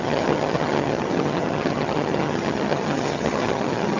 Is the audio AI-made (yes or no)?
yes